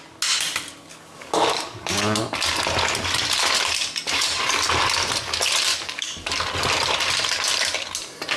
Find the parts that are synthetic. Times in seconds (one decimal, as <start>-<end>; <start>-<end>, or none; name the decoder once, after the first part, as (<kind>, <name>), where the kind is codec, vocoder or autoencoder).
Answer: 0.9-2.2 (codec, DAC); 5.7-6.3